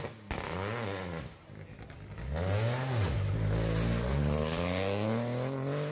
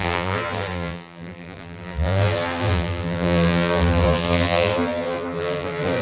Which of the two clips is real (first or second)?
first